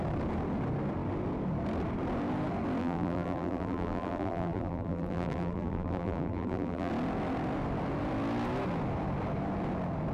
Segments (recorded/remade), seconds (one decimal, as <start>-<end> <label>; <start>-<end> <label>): 0.0-2.8 recorded; 2.8-6.9 remade; 6.9-10.1 recorded